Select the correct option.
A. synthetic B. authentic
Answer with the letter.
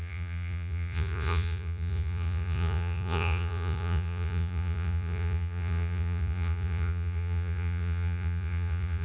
A